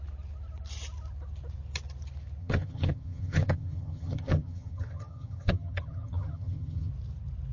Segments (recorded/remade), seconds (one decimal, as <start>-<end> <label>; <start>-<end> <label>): 0.0-2.4 recorded; 2.4-6.9 remade; 6.9-7.5 recorded